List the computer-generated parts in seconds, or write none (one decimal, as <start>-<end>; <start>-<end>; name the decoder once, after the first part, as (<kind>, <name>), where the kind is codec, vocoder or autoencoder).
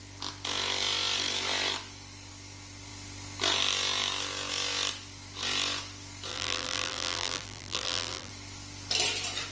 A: 6.3-8.3 (vocoder, BigVGAN v2)